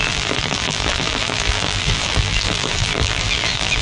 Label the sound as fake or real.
fake